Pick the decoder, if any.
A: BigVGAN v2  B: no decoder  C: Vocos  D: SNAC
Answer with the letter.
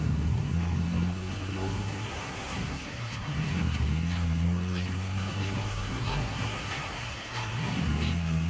D